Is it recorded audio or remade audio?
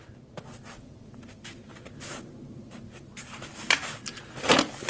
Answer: recorded